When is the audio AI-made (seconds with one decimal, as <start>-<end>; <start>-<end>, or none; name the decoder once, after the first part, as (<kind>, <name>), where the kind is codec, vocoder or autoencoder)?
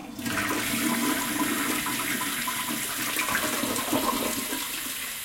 none